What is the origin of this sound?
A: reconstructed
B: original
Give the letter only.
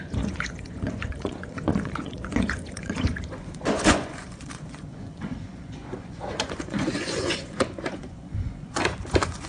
A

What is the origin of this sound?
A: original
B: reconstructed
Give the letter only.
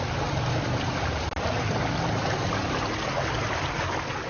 A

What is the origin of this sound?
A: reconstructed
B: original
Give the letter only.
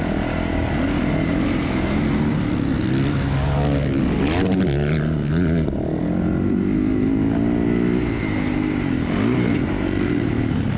B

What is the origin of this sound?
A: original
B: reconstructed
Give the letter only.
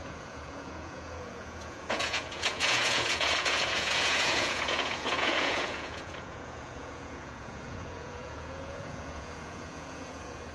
B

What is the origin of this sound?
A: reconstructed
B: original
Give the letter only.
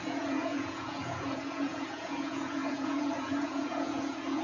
A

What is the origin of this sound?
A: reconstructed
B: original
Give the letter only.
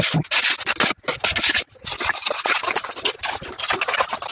B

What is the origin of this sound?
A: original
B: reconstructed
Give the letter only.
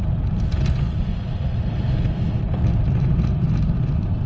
A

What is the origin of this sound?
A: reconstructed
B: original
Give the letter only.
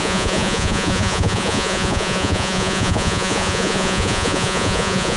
A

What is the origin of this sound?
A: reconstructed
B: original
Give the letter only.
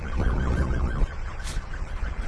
A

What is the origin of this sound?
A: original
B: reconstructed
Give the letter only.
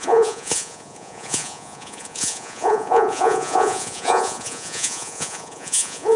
B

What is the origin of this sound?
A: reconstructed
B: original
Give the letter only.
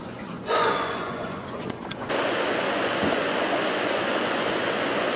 A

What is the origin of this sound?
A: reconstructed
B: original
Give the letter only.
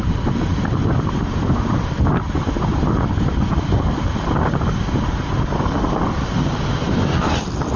B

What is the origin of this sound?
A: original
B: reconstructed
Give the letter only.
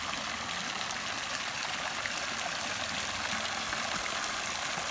A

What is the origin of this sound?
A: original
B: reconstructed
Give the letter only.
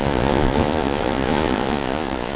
B